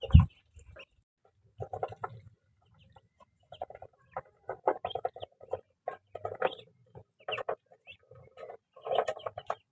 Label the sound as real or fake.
real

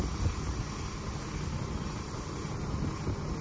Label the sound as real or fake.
real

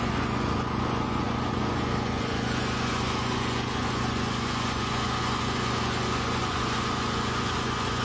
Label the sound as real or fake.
fake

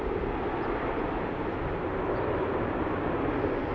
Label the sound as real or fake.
real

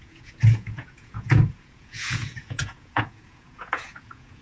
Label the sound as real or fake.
fake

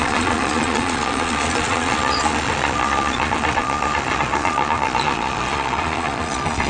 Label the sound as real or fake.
fake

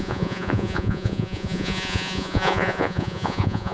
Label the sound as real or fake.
fake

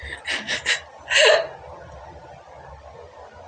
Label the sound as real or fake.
real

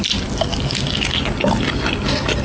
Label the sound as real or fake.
real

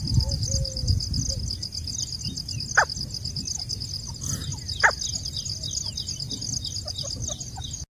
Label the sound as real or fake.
real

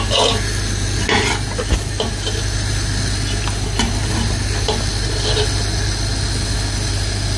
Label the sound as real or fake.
real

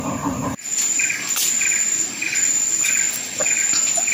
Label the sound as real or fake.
real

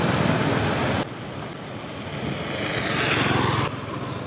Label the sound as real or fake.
real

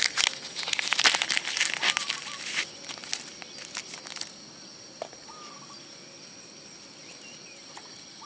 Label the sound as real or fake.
real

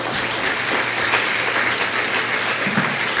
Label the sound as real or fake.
real